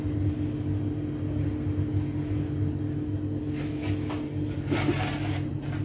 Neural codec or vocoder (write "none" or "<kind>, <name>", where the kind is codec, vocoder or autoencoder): none